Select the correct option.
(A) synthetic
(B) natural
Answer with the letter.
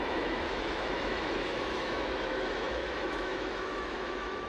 A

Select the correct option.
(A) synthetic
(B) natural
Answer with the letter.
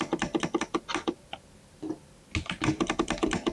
B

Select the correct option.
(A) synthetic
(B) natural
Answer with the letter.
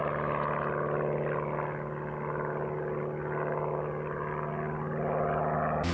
B